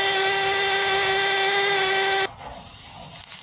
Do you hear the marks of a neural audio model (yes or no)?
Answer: no